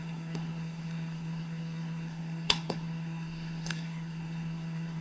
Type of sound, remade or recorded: remade